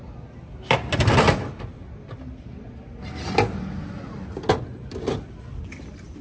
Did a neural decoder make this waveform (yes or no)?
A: no